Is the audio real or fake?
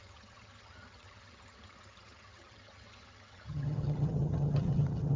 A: fake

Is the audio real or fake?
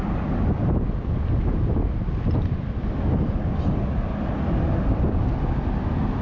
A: real